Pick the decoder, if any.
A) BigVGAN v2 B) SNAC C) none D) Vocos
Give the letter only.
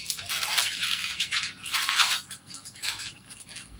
B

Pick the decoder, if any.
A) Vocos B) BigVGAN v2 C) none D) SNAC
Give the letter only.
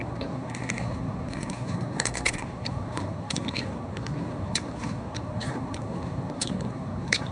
D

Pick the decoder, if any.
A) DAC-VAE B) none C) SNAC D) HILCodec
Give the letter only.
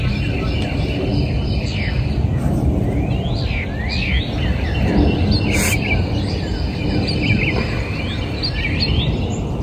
B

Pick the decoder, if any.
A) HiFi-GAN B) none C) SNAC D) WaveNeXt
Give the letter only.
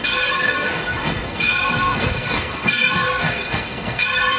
C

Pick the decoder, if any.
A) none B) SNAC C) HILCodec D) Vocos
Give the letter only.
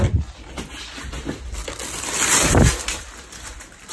A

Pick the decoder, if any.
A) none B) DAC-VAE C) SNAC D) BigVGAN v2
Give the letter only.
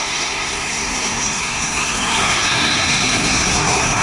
C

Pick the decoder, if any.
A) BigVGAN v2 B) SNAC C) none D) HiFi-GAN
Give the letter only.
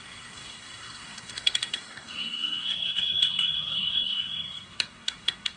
B